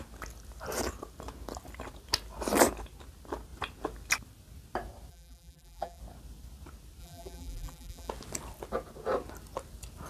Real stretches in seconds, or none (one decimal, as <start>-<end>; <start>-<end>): 0.0-5.1; 6.0-7.0; 8.1-10.1